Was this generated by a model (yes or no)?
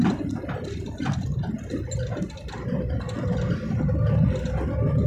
no